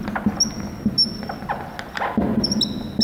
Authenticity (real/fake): real